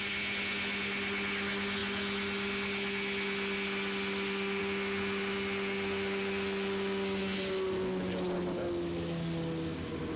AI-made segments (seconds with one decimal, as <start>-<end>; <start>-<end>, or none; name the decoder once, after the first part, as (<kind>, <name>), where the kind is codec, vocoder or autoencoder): none